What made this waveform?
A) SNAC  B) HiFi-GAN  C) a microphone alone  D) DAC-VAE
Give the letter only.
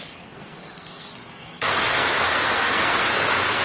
A